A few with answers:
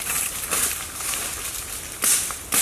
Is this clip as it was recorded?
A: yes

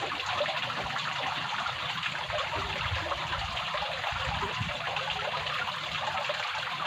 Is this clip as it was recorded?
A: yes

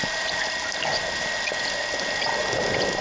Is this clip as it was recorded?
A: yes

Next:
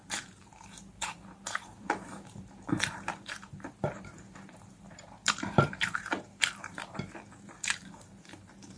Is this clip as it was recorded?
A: no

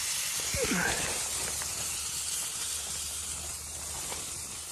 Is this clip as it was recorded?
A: yes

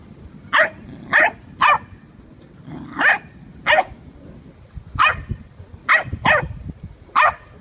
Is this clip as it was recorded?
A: yes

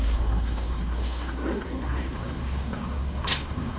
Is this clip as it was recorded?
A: no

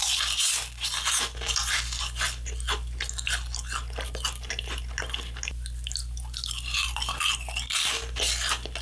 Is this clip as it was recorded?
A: yes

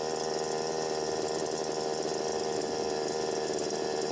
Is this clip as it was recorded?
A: yes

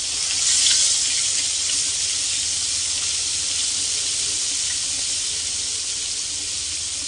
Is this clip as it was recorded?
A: yes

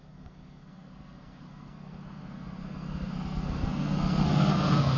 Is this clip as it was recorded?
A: no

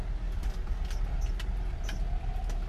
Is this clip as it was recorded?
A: yes